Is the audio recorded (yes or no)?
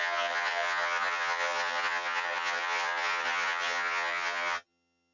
no